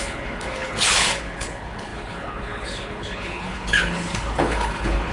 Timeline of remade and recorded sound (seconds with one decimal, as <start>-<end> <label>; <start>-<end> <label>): 0.0-5.1 remade

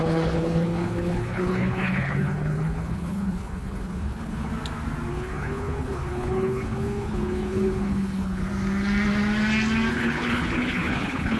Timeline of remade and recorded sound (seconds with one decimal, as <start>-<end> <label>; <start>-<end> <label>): 0.0-4.5 remade; 4.5-5.1 recorded; 5.1-8.4 remade; 8.4-9.9 recorded; 9.9-11.4 remade

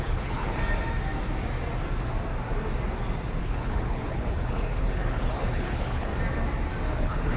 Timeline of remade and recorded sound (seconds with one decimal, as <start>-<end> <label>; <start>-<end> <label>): 0.0-0.6 remade; 0.6-3.4 recorded; 3.4-6.1 remade; 6.1-7.0 recorded; 7.0-7.4 remade

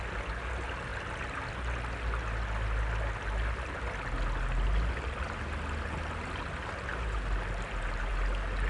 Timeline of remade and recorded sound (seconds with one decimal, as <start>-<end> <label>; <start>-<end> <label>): 0.0-8.7 recorded

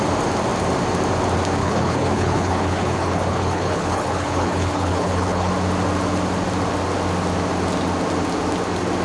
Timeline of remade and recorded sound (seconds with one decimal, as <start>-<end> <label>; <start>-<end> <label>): 0.0-1.6 recorded; 1.6-5.5 remade; 5.5-9.0 recorded

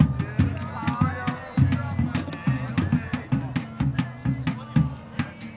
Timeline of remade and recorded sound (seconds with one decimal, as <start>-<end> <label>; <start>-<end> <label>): 0.0-5.6 recorded

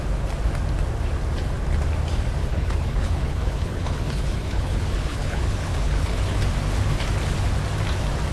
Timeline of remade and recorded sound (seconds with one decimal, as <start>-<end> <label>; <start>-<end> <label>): 0.0-2.4 recorded; 2.4-6.4 remade; 6.4-8.3 recorded

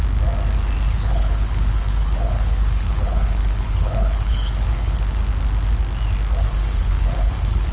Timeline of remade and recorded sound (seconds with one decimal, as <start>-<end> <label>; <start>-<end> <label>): 0.0-0.9 recorded; 0.9-5.2 remade; 5.2-6.4 recorded; 6.4-7.7 remade